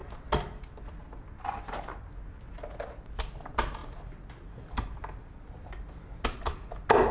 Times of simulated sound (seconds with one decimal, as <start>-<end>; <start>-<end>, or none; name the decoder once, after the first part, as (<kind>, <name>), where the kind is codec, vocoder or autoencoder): none